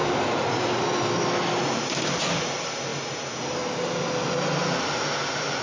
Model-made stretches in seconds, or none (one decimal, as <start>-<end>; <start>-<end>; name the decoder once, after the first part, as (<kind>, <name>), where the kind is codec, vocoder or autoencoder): none